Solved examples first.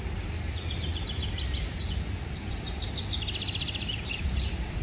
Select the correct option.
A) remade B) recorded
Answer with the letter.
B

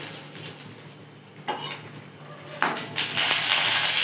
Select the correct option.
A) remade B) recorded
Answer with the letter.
B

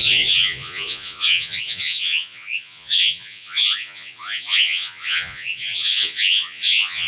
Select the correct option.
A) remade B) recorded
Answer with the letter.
A